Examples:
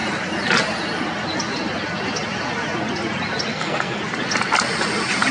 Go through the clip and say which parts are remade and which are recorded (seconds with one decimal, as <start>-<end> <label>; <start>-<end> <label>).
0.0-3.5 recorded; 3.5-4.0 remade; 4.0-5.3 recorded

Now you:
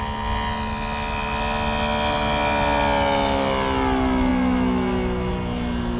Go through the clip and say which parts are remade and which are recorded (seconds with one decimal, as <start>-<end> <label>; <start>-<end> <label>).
0.0-6.0 recorded

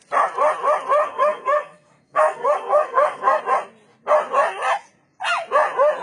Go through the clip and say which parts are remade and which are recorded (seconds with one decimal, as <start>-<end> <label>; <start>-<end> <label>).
0.0-1.0 recorded; 1.0-3.4 remade; 3.4-6.0 recorded

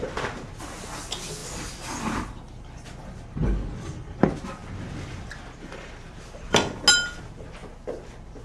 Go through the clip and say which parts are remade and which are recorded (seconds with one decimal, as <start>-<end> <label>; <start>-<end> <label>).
0.0-8.4 recorded